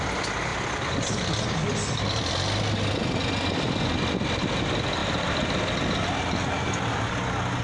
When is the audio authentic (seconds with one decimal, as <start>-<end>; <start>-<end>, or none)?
0.0-7.6